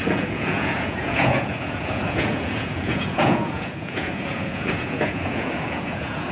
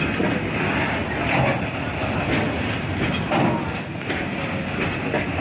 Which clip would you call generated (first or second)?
first